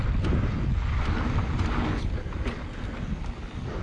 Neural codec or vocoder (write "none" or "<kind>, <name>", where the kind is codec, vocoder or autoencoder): none